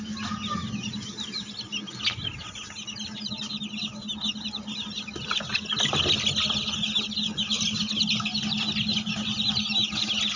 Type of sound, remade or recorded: recorded